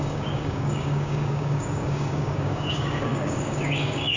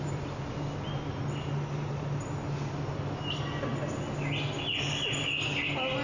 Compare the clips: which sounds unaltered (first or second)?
second